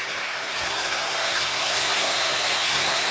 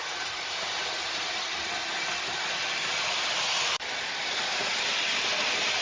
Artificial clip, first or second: first